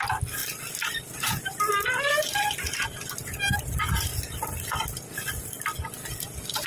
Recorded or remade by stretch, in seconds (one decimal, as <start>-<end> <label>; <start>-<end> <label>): 0.0-6.7 recorded